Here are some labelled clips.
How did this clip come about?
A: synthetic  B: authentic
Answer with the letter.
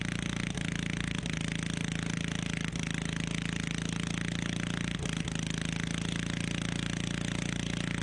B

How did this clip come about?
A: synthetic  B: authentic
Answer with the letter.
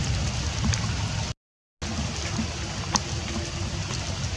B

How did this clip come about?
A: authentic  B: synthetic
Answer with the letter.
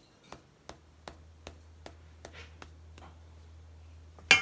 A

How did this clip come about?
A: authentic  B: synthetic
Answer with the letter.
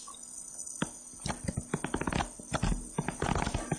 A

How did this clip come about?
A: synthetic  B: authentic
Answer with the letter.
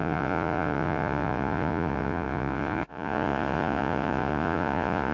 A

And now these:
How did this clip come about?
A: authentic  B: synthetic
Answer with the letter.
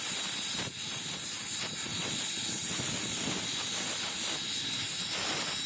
A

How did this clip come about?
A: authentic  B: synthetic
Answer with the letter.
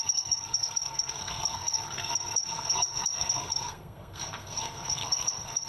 B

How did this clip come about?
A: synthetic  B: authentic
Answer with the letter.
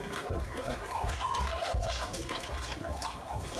A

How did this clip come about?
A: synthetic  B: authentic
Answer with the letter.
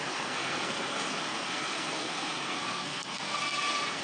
A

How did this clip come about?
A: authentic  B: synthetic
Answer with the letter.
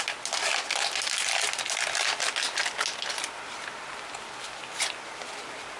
A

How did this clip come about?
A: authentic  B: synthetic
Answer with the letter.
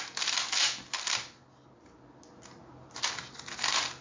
A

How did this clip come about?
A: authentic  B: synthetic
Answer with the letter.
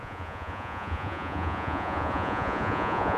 B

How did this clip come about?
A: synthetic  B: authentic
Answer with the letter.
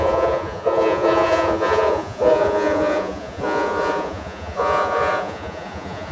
A